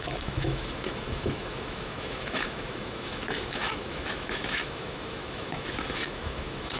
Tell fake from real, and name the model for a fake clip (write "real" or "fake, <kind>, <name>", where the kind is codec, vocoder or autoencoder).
fake, autoencoder, DAC-VAE